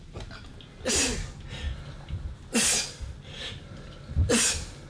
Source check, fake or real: real